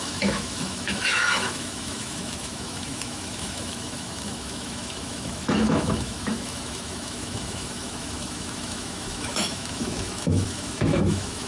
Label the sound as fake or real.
fake